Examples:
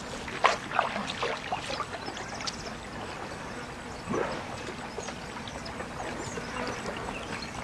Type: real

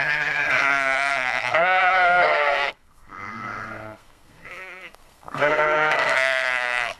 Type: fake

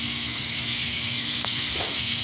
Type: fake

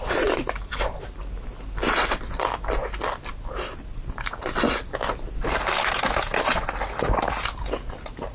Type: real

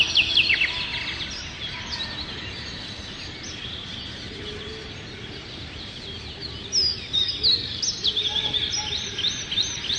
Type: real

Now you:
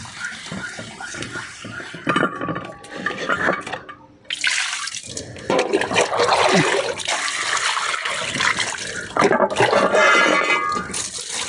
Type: real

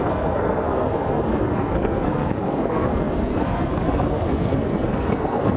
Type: fake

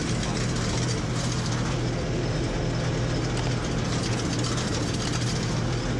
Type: real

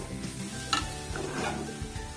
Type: real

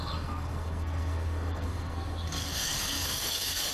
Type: fake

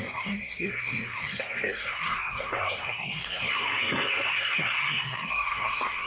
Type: fake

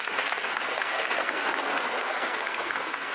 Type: fake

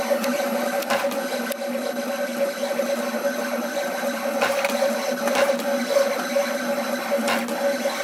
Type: real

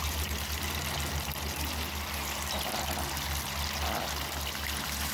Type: real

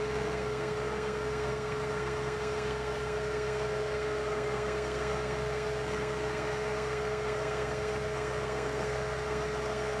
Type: fake